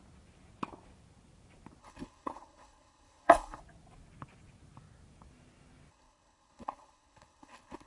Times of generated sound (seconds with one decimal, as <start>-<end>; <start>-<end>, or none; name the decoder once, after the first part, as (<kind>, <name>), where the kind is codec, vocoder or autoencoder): 1.8-3.6 (codec, HILCodec); 5.9-7.9